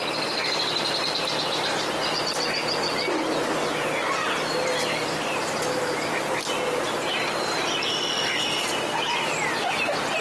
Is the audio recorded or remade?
recorded